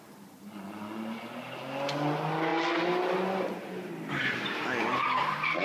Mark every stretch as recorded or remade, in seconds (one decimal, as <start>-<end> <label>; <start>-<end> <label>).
0.0-5.6 recorded